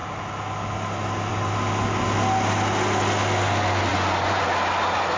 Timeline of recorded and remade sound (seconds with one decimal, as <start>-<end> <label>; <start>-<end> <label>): 0.0-3.9 recorded; 3.9-4.4 remade; 4.4-5.2 recorded